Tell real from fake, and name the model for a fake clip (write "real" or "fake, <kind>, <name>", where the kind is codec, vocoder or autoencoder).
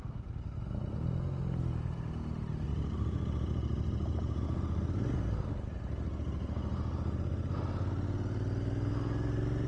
real